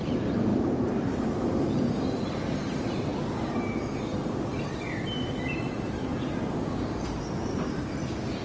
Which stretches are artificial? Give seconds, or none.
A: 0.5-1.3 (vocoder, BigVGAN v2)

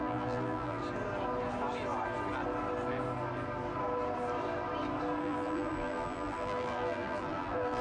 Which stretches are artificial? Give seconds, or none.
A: 0.0-0.8 (vocoder, BigVGAN v2); 5.2-7.8

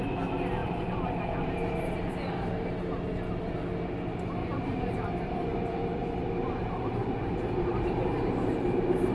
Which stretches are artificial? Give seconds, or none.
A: 0.6-2.3 (vocoder, BigVGAN v2); 4.4-7.4

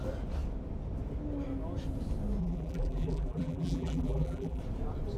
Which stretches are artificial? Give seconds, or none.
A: 2.4-4.6 (vocoder, BigVGAN v2)